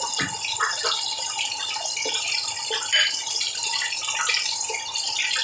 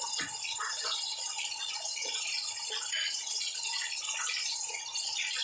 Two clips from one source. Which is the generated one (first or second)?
second